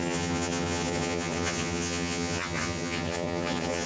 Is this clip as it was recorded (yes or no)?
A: no